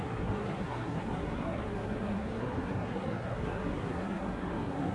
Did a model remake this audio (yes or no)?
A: yes